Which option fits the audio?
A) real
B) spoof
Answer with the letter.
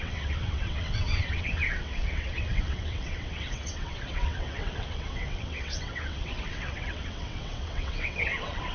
B